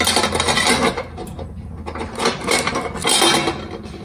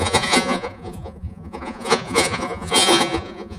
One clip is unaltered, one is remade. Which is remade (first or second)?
second